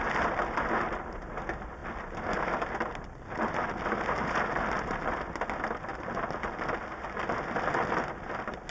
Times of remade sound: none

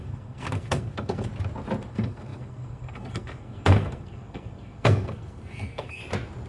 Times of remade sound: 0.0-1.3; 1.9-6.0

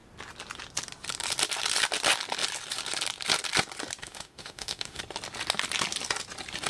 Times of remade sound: 4.0-5.0

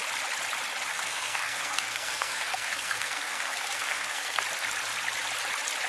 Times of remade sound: 0.9-4.4